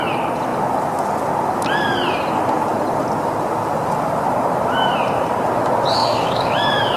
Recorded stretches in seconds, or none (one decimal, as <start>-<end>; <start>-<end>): 0.0-6.0